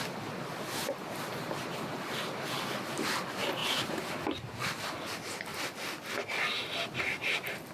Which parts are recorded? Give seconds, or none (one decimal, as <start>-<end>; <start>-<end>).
0.0-1.3; 2.2-3.6; 4.1-7.7